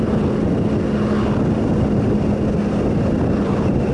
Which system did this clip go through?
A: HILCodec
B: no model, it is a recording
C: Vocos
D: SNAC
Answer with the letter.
B